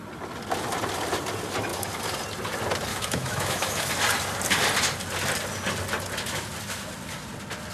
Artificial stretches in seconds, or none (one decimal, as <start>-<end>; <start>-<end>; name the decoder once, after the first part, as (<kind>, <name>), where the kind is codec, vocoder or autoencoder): 2.9-3.9 (autoencoder, DAC-VAE)